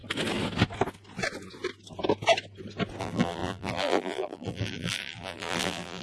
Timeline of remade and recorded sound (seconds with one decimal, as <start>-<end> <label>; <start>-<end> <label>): 0.0-3.0 recorded; 3.0-6.0 remade